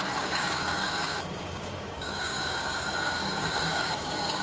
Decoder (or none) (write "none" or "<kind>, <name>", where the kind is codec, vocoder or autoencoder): codec, DAC